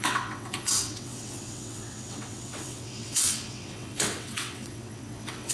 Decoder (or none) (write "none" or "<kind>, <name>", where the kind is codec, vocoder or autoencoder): vocoder, WaveNeXt